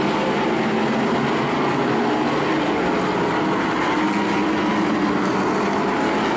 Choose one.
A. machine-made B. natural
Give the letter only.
B